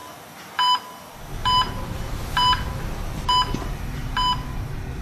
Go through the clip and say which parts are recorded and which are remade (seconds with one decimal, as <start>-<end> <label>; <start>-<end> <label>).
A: 0.0-0.8 remade; 0.8-1.4 recorded; 1.4-3.3 remade; 3.3-4.0 recorded; 4.0-5.0 remade